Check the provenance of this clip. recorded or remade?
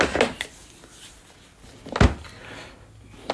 recorded